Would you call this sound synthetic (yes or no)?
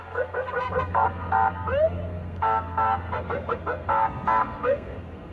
yes